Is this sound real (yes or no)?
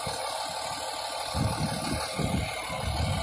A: yes